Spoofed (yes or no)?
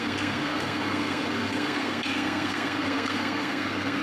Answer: yes